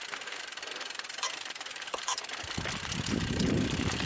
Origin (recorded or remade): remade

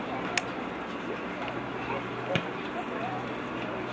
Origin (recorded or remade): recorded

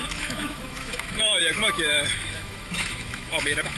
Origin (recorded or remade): remade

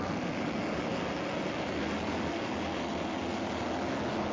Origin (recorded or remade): recorded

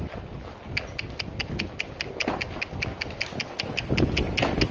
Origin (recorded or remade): recorded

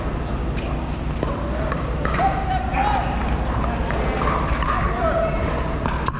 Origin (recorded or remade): recorded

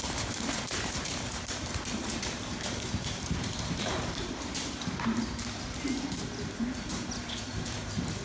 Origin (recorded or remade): remade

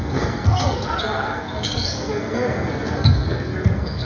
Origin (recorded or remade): remade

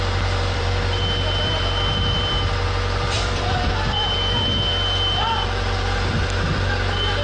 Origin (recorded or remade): remade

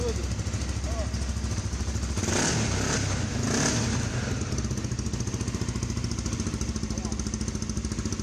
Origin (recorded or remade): recorded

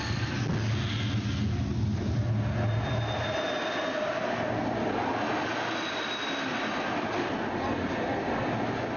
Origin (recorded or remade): recorded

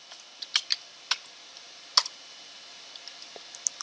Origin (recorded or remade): recorded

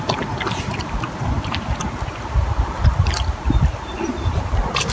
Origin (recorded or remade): recorded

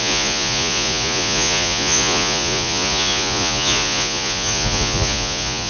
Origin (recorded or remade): remade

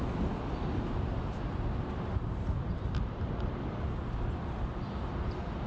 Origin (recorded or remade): recorded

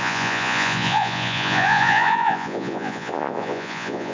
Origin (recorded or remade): remade